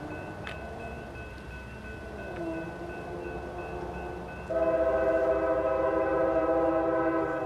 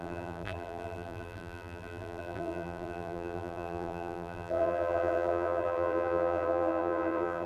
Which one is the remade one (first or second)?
second